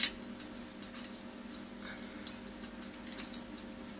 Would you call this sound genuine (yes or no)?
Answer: yes